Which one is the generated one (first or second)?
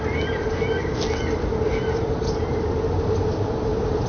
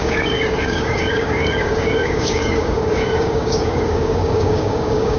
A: second